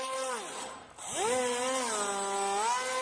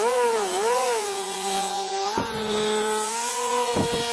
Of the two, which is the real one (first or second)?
first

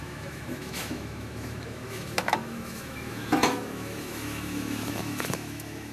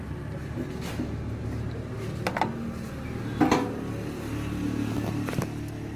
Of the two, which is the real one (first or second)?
second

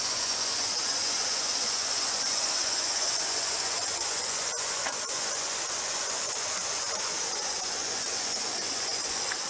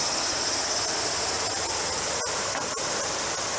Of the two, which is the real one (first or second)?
second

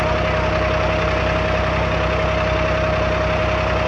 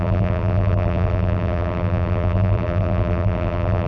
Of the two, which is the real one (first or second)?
first